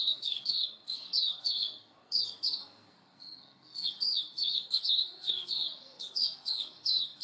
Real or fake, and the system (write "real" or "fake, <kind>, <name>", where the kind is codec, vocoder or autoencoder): fake, codec, SNAC